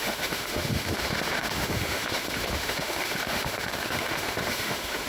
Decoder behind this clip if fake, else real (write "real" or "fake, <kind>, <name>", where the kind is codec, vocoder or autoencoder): fake, autoencoder, DAC-VAE